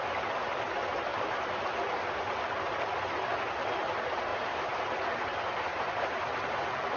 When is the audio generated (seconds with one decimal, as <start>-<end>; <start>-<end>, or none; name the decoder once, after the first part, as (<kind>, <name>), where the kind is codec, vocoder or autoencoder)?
1.1-1.6 (vocoder, BigVGAN v2); 4.3-6.6